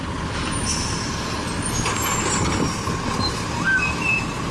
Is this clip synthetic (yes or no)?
no